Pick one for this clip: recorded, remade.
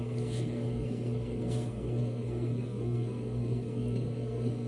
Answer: remade